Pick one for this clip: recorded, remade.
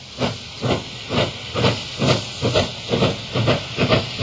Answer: recorded